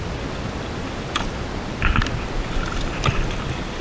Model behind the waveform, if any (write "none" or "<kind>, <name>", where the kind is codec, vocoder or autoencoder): none